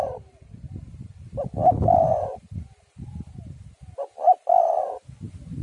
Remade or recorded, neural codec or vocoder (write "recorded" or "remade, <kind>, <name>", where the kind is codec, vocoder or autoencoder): recorded